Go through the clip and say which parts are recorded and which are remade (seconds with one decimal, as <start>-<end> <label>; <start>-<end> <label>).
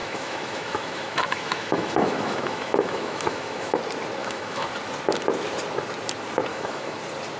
0.0-3.8 remade; 3.8-4.2 recorded; 4.2-4.7 remade; 4.7-6.5 recorded; 6.5-7.0 remade; 7.0-7.4 recorded